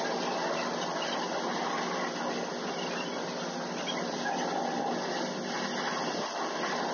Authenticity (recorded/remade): recorded